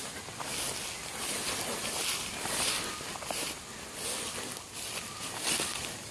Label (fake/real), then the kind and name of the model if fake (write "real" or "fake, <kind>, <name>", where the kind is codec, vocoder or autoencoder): real